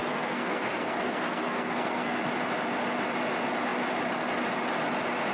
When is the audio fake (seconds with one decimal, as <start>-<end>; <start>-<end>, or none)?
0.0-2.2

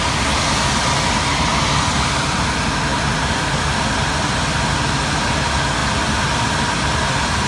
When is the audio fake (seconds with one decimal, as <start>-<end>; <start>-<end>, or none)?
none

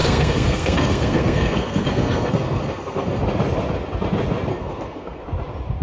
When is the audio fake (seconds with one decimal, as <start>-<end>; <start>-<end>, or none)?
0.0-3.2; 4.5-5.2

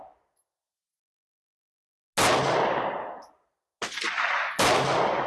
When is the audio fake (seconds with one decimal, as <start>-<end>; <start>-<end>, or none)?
none

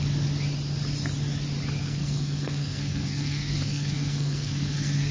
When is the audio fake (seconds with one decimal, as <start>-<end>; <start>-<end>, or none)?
1.8-5.1

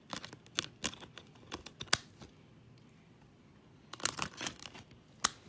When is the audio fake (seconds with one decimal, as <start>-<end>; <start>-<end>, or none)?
none